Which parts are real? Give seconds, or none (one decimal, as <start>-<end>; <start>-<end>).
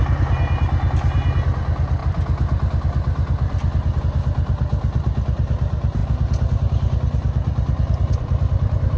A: none